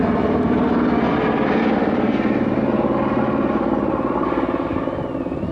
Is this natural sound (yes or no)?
yes